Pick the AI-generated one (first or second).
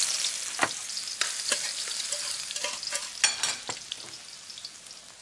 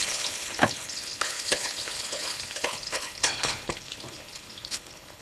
second